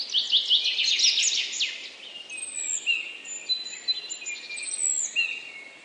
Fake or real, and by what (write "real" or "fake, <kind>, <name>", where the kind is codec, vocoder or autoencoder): real